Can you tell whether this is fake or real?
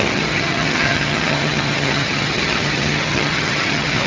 fake